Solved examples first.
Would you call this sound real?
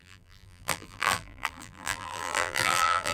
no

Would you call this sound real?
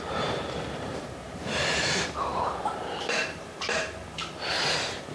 no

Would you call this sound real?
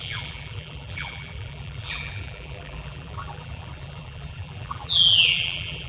no